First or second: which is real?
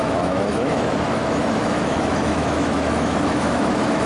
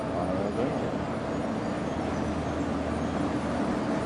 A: second